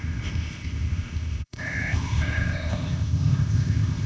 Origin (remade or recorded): remade